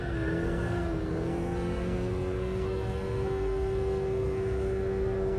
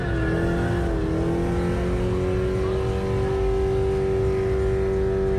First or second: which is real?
second